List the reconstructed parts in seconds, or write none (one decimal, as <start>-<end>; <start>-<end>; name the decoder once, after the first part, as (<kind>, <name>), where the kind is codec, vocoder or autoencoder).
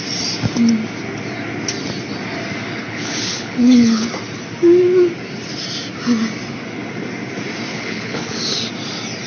2.8-4.1 (codec, HILCodec); 7.7-8.4